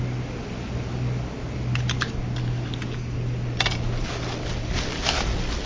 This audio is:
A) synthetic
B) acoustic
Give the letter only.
B